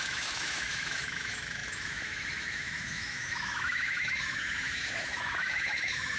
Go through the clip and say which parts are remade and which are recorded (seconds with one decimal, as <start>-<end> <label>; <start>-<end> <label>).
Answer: 0.0-6.2 remade